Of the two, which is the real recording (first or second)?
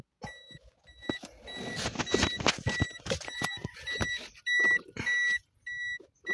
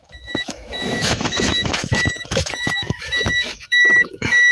first